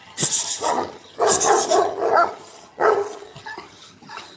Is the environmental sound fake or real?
fake